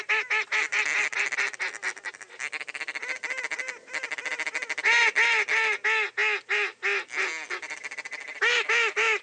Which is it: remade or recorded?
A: recorded